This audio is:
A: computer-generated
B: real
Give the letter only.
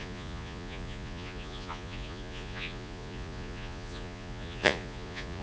A